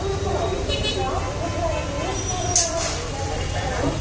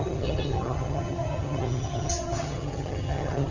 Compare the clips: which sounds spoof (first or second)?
second